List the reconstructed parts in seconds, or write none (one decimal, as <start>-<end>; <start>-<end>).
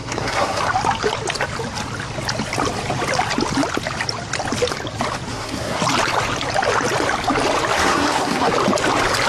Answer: 0.0-0.6; 5.3-5.8; 7.8-8.5